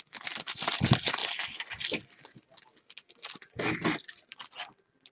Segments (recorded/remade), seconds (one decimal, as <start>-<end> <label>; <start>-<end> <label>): 0.0-5.1 recorded

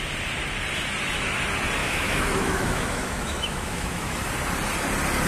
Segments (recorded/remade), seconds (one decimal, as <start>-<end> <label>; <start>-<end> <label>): 0.0-1.8 recorded; 1.8-4.3 remade; 4.3-5.3 recorded

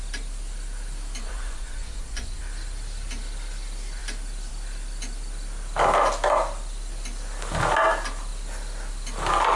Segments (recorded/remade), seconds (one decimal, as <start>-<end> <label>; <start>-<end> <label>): 0.0-1.2 recorded; 1.2-2.4 remade; 2.4-9.6 recorded

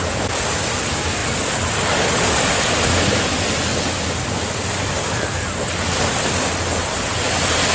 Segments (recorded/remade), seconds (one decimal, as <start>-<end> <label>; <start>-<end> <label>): 0.0-1.2 recorded; 1.2-2.0 remade; 2.0-3.7 recorded; 3.7-5.0 remade; 5.0-7.7 recorded

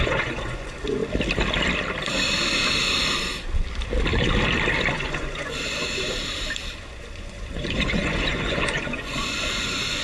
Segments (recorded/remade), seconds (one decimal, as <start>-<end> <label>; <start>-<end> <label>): 0.0-1.0 remade; 1.0-4.9 recorded; 4.9-5.8 remade; 5.8-6.8 recorded; 6.8-10.0 remade

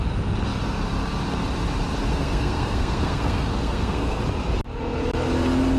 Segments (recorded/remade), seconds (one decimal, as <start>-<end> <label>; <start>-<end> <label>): 0.0-2.1 recorded; 2.1-4.2 remade; 4.2-5.8 recorded

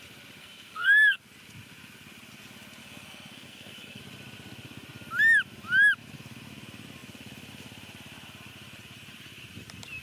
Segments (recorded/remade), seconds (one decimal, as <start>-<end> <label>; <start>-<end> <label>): 0.0-0.4 recorded; 0.4-1.2 remade; 1.2-2.8 recorded; 2.8-4.0 remade; 4.0-10.0 recorded